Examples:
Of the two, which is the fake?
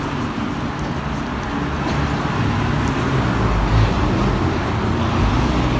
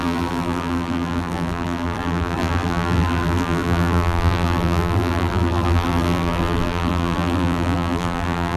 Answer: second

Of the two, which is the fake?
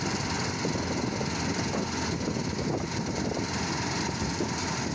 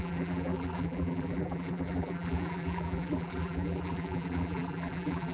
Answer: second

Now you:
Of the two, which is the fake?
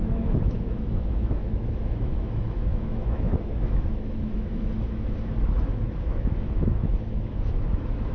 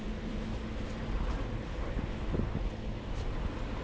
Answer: first